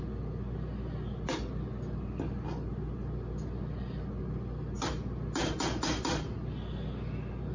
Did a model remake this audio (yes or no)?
no